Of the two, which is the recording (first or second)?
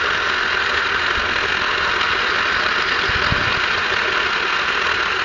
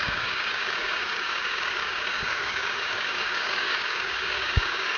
first